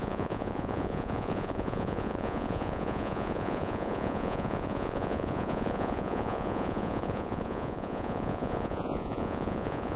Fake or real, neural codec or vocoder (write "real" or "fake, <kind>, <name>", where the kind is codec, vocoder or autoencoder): fake, vocoder, Vocos